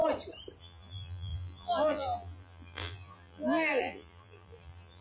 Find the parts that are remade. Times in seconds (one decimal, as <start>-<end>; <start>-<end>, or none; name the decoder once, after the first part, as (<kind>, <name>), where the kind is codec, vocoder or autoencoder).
0.6-5.0 (vocoder, BigVGAN v2)